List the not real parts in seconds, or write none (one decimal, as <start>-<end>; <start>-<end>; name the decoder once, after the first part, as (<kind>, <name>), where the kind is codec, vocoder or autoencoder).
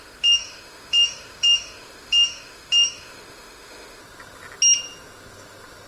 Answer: 0.0-4.0 (autoencoder, DAC-VAE)